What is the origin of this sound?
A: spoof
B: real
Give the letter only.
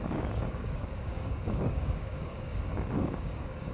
A